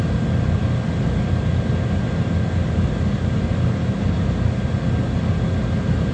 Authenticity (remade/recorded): recorded